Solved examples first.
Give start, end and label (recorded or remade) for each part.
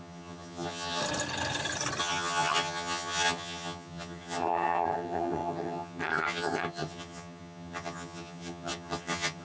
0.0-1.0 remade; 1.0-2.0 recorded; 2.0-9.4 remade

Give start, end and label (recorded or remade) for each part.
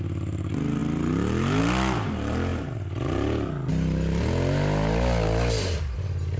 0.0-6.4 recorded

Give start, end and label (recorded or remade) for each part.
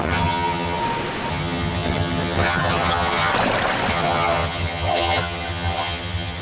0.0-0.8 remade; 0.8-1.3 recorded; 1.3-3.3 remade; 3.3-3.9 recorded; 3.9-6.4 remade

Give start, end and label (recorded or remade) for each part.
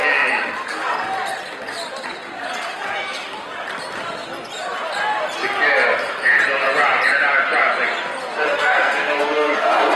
0.0-8.5 recorded; 8.5-10.0 remade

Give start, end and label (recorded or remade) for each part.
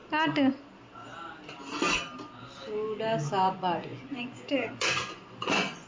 0.0-3.5 recorded; 3.5-5.9 remade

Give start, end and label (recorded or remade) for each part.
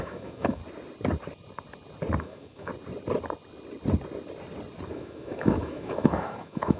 0.0-0.6 remade; 0.6-2.2 recorded; 2.2-2.7 remade; 2.7-4.9 recorded; 4.9-6.8 remade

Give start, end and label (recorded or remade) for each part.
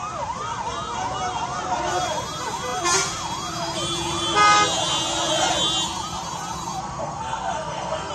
0.0-6.8 recorded; 6.8-8.1 remade